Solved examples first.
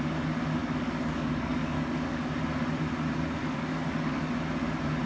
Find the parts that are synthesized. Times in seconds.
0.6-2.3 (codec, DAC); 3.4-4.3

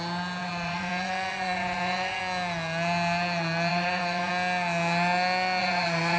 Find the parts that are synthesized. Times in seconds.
0.4-2.2 (vocoder, Vocos); 3.7-4.3; 5.6-6.2